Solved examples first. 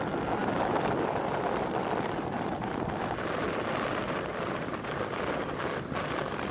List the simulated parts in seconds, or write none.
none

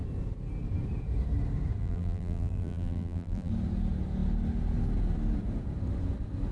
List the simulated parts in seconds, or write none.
1.8-3.5 (vocoder, BigVGAN v2)

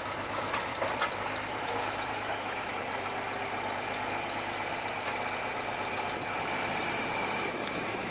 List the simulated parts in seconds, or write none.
0.0-0.7 (autoencoder, DAC-VAE); 1.6-2.7; 7.0-8.1

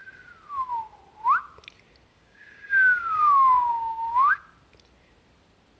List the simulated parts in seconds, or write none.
2.1-4.3 (codec, DAC)

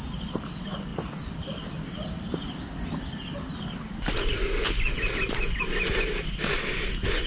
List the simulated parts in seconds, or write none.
none

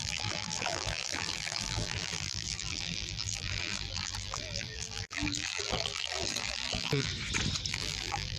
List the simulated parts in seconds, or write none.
0.0-7.1 (vocoder, BigVGAN v2); 7.7-8.4

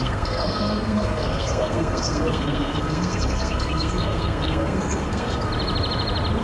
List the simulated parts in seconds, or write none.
0.0-5.5 (codec, SNAC)